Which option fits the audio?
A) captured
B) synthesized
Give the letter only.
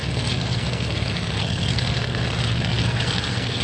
B